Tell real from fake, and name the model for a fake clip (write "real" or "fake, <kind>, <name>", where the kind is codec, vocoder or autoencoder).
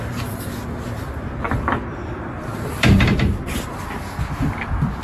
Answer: real